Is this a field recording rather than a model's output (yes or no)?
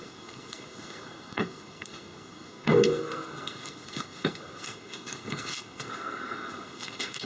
no